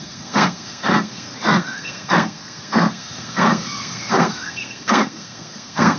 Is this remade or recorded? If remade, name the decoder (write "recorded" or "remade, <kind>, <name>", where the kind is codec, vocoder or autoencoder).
remade, codec, SNAC